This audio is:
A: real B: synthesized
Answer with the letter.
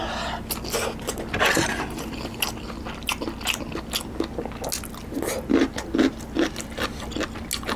A